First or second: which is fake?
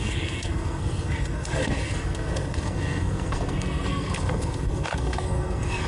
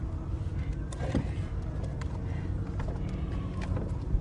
first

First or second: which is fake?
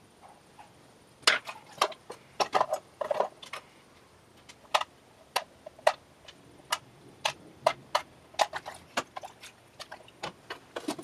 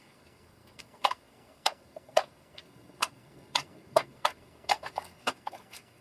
second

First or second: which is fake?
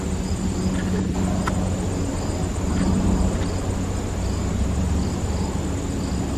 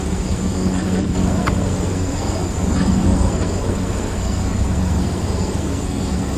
second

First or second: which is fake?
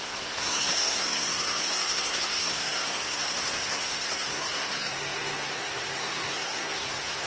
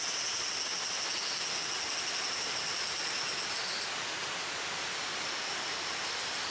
first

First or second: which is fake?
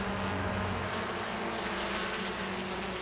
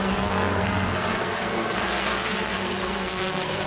second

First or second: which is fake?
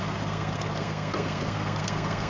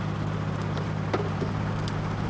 first